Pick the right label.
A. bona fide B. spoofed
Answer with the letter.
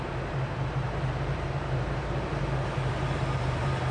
B